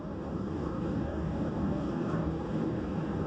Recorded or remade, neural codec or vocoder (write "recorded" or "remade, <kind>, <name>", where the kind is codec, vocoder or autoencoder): remade, codec, DAC